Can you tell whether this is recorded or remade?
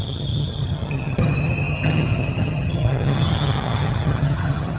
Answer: remade